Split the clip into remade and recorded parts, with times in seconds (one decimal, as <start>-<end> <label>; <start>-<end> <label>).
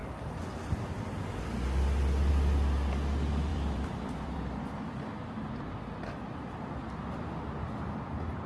0.0-3.5 recorded; 3.5-5.7 remade; 5.7-8.5 recorded